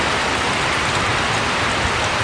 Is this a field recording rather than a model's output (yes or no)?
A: yes